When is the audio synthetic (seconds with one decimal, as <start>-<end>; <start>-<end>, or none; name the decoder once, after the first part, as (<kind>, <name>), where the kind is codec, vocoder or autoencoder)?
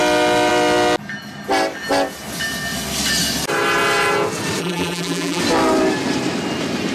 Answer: 4.6-5.4 (vocoder, BigVGAN v2)